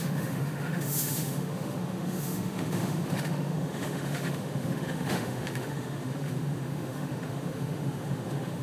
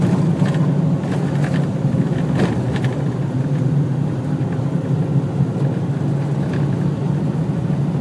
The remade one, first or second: first